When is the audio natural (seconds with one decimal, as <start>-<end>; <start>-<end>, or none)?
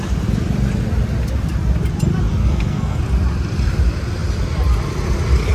0.0-2.4; 3.0-5.5